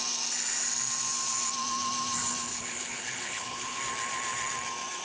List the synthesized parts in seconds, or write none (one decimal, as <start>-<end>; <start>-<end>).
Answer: 2.5-3.8

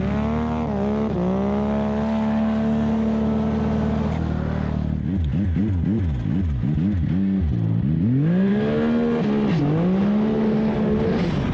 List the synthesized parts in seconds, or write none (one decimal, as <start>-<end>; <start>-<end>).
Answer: none

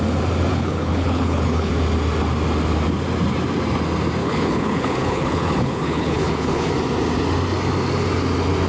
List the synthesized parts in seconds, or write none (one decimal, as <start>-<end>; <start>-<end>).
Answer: 0.5-1.7; 4.2-6.7

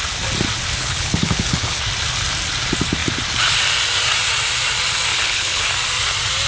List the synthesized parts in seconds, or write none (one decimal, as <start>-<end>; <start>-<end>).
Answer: 0.8-1.8; 5.1-5.6